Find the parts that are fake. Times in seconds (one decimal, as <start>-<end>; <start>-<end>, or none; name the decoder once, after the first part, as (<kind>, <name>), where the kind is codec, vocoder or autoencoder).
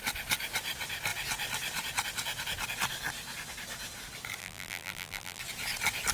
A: 4.4-5.4 (vocoder, BigVGAN v2)